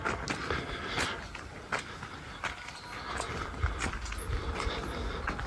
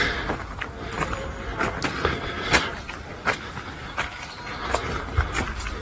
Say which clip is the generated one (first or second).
second